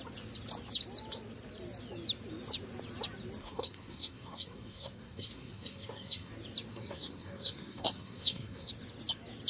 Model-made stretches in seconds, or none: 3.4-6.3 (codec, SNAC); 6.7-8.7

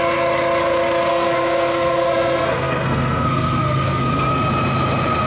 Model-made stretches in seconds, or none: 1.1-4.3 (codec, SNAC)